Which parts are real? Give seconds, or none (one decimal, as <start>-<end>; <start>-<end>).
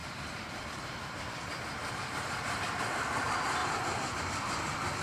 none